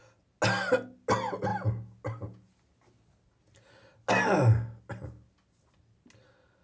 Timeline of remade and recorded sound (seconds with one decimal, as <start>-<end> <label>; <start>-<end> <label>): 0.0-6.6 recorded